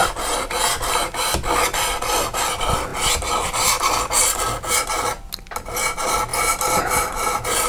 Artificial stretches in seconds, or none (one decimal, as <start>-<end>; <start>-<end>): none